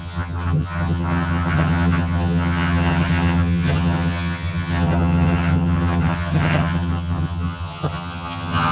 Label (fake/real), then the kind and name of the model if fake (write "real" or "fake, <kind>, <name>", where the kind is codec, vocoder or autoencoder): fake, vocoder, HiFi-GAN